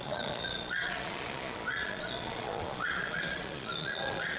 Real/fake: fake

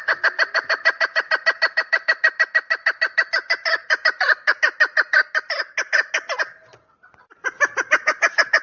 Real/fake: real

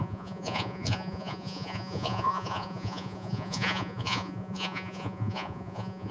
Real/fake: fake